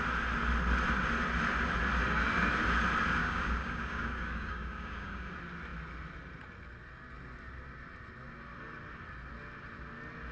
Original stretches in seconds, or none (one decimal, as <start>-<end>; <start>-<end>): 0.0-3.2; 5.3-10.3